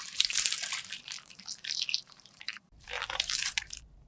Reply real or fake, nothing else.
fake